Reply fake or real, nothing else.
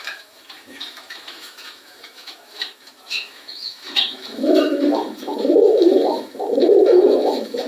fake